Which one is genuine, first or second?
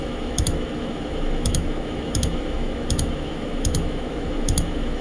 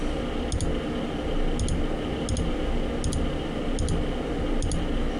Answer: second